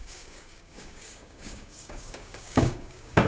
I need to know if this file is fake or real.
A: fake